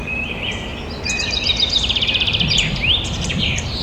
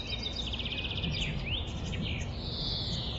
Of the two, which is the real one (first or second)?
second